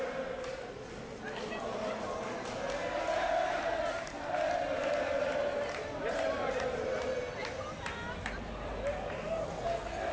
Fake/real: real